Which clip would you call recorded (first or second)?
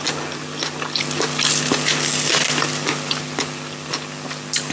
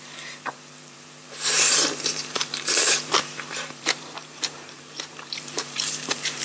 first